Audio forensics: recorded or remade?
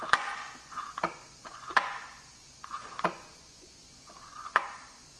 remade